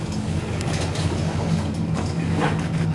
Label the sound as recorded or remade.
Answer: remade